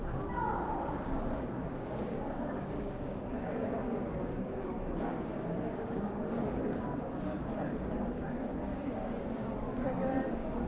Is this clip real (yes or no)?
no